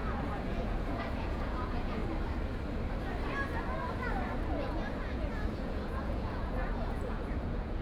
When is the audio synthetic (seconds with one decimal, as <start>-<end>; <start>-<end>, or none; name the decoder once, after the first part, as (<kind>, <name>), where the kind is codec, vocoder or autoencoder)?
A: 0.0-2.0 (vocoder, Vocos); 4.6-7.8